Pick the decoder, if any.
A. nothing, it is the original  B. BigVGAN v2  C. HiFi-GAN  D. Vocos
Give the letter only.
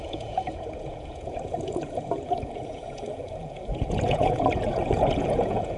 D